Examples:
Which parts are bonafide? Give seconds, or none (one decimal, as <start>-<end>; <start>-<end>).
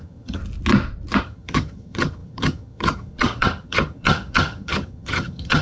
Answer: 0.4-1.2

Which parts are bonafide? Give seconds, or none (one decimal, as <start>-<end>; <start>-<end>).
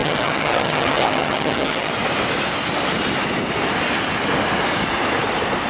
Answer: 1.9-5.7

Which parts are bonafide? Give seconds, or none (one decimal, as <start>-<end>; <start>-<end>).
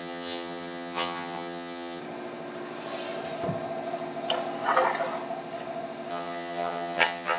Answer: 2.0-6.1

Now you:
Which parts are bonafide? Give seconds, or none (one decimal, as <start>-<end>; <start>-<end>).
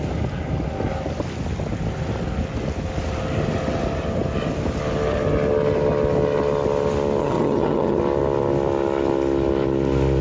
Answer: 0.0-7.2; 8.0-10.2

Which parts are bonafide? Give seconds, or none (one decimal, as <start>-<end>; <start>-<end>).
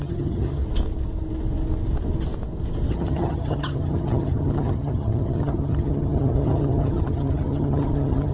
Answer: 0.6-2.9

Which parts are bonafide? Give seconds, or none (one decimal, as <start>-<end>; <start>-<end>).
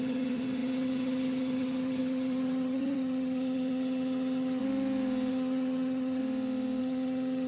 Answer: 4.6-5.3; 6.2-6.8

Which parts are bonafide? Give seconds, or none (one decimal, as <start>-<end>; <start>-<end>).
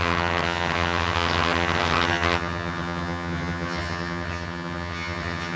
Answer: none